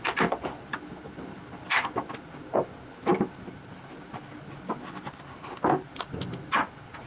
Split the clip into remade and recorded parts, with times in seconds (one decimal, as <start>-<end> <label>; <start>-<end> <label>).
0.0-7.1 recorded